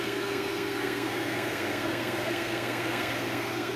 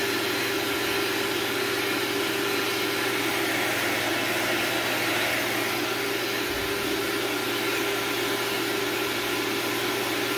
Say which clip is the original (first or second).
second